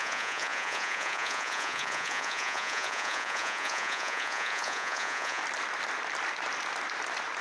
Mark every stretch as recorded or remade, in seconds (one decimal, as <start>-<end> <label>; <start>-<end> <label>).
0.0-5.4 remade; 5.4-7.4 recorded